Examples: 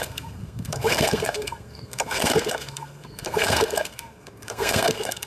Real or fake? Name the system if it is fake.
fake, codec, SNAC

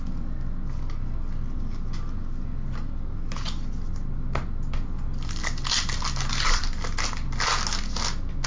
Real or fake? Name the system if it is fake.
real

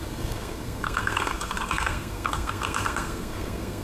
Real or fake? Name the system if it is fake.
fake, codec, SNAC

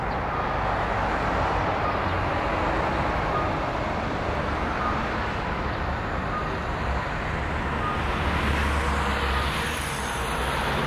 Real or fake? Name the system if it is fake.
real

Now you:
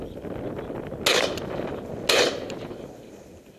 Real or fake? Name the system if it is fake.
real